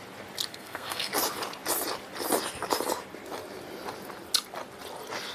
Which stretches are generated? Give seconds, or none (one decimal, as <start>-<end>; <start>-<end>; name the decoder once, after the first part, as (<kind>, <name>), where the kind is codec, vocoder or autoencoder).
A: 0.5-1.1 (codec, SNAC)